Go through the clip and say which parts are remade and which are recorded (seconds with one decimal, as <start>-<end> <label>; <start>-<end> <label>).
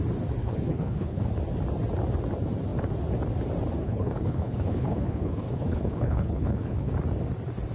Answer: 0.0-0.4 recorded; 0.4-1.3 remade; 1.3-3.8 recorded; 3.8-6.9 remade; 6.9-7.7 recorded